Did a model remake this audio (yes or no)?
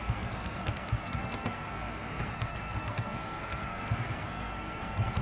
yes